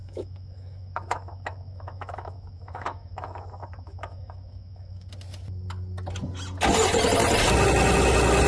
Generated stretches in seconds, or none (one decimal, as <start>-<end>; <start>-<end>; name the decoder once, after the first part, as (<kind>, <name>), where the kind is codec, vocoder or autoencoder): 0.0-5.1 (autoencoder, DAC-VAE)